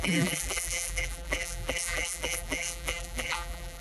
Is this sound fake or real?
fake